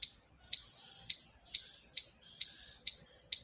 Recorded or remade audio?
recorded